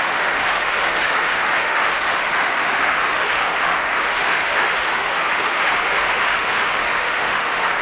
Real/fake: fake